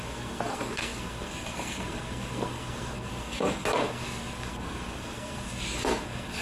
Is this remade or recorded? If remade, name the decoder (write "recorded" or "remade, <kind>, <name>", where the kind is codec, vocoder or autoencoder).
remade, codec, SNAC